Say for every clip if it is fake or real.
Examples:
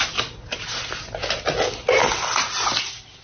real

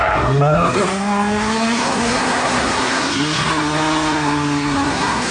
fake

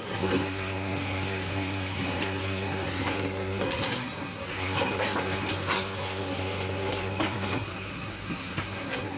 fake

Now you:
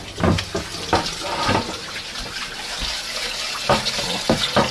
real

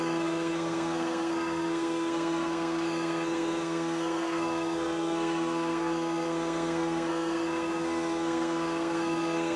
fake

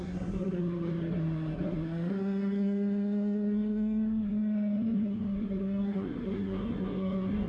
fake